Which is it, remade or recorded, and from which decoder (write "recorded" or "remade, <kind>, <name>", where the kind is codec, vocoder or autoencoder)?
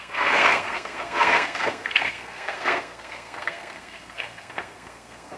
remade, codec, SNAC